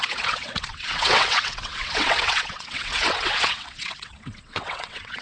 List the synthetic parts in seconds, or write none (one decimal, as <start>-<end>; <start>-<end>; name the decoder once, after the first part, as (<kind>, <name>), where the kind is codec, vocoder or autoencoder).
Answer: 0.0-5.2 (vocoder, WaveNeXt)